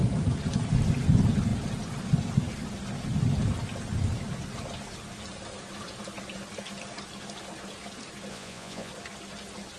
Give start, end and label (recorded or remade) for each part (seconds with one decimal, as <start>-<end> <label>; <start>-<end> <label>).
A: 0.0-8.3 recorded; 8.3-8.9 remade; 8.9-9.8 recorded